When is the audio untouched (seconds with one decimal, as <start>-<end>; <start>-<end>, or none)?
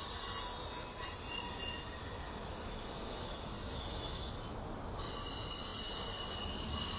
0.0-2.0; 4.3-7.0